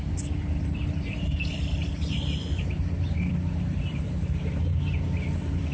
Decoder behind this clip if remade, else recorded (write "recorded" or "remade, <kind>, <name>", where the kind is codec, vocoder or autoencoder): remade, vocoder, BigVGAN v2